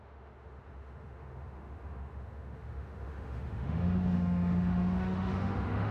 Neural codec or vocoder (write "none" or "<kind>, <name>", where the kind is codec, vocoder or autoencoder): autoencoder, DAC-VAE